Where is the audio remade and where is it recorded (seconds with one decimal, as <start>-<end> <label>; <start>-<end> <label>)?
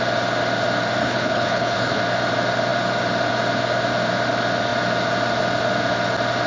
0.0-1.0 recorded; 1.0-2.0 remade; 2.0-6.5 recorded